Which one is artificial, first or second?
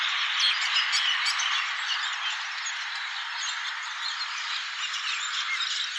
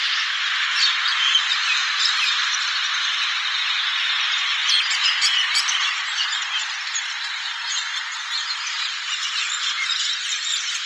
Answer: second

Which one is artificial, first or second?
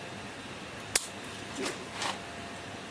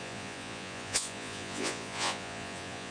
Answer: second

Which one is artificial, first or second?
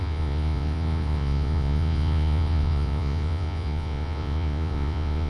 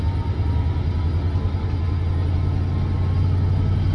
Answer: first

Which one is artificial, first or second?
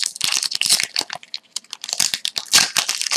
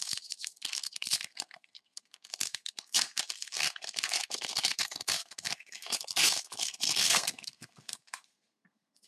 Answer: second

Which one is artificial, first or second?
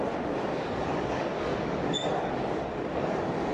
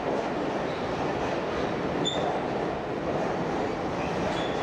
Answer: first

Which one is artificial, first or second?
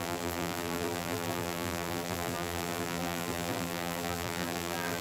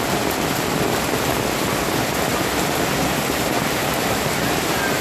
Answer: first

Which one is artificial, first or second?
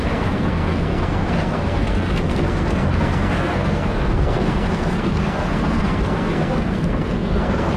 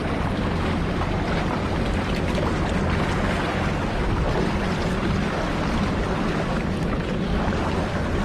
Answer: first